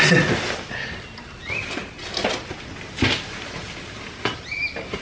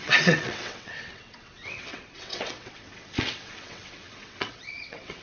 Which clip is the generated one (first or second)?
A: second